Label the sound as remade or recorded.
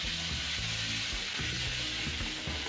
recorded